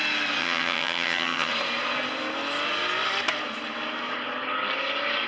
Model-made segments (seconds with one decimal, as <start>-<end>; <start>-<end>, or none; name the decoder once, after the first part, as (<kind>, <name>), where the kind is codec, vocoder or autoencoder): 0.4-1.5 (vocoder, HiFi-GAN)